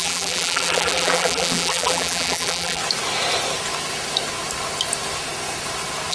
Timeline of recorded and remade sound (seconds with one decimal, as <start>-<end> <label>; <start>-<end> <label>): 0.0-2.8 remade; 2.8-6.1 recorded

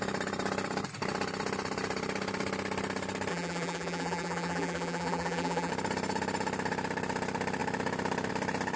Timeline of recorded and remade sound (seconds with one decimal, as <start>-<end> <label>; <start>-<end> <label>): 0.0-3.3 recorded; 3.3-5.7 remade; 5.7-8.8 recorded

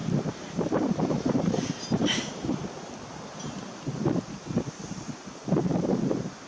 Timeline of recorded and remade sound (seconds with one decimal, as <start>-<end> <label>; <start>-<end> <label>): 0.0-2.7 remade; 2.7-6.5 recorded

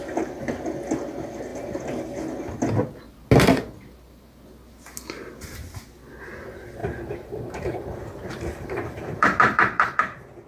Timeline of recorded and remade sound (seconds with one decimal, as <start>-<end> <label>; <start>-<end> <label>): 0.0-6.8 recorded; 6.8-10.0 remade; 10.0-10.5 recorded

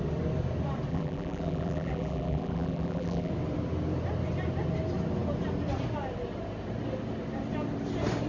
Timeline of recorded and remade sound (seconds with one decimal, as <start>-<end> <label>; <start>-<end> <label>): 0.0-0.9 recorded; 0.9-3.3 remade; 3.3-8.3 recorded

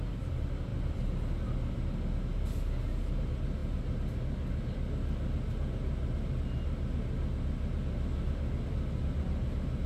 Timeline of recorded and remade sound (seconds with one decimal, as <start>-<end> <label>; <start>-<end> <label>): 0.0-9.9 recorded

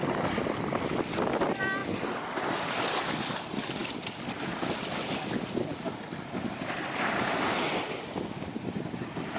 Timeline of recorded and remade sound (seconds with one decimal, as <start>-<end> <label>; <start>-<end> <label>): 0.0-9.4 recorded

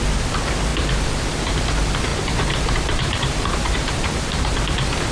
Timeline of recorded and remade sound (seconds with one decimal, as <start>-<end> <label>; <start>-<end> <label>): 0.0-2.1 recorded; 2.1-4.6 remade; 4.6-5.1 recorded